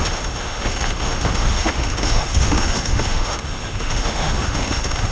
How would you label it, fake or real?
fake